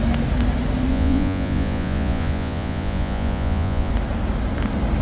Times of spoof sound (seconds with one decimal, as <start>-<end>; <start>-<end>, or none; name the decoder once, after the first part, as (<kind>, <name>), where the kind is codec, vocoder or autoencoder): 0.9-3.9 (vocoder, Vocos)

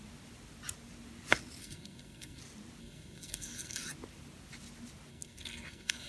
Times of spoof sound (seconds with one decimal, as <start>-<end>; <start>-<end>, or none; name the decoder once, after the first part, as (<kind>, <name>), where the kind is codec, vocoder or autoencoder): 1.6-2.4 (codec, SNAC); 2.8-3.9; 5.1-6.1

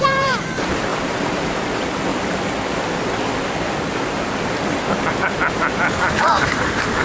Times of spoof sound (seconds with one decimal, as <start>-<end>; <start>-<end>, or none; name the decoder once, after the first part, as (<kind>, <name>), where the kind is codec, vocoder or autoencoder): 0.0-2.1 (vocoder, BigVGAN v2); 6.3-7.0

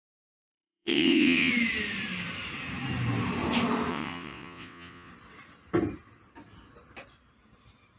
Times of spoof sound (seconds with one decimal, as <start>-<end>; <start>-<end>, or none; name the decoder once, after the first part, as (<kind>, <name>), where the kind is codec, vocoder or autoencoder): 0.0-1.5 (vocoder, WaveNeXt); 3.9-5.1

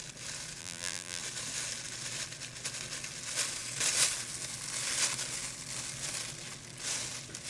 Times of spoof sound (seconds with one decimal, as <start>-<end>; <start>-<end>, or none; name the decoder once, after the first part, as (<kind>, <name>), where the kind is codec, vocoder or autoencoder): 0.6-1.2 (vocoder, BigVGAN v2)

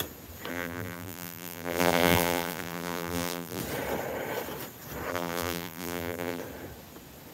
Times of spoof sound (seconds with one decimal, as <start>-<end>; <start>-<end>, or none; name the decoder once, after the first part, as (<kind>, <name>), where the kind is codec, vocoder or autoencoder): 0.5-3.6 (vocoder, BigVGAN v2); 5.1-6.4

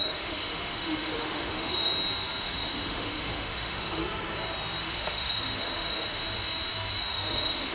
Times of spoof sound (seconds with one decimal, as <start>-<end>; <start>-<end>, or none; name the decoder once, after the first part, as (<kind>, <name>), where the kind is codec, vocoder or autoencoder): 0.0-1.9 (autoencoder, DAC-VAE); 2.4-4.0; 4.8-6.2; 7.0-7.7

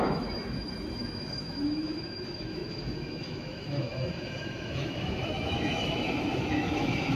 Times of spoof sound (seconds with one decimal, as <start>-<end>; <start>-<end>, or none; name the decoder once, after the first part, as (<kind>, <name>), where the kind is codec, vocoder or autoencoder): 0.0-7.1 (autoencoder, DAC-VAE)